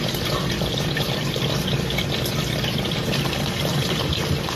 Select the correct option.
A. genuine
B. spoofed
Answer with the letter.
B